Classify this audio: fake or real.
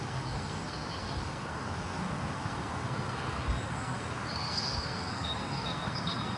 fake